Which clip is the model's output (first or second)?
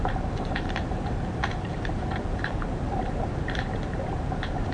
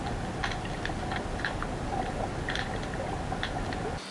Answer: first